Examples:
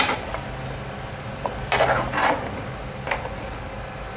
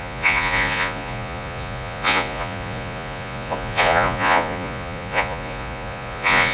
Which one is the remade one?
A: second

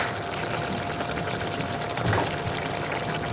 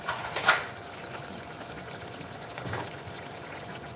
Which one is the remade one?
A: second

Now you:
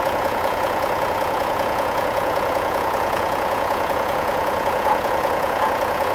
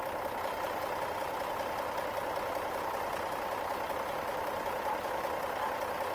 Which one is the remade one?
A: first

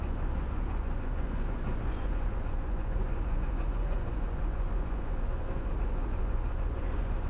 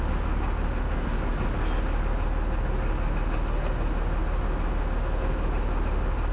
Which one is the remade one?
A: first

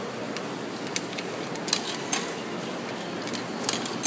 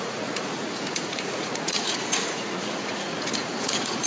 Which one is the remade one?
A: second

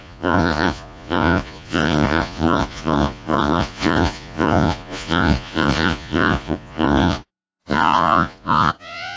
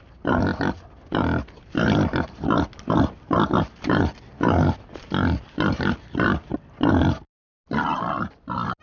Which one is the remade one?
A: first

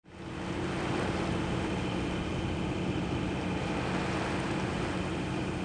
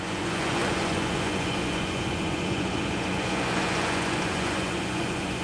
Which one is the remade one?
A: second